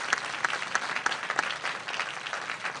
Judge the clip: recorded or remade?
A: recorded